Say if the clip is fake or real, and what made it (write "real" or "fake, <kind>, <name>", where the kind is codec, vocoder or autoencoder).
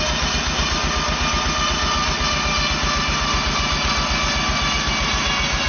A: real